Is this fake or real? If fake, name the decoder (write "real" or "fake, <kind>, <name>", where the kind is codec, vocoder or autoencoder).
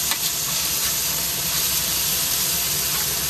real